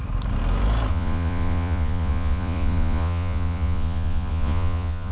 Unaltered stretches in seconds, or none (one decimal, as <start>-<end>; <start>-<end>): 0.0-0.9